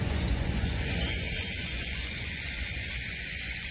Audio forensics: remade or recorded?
remade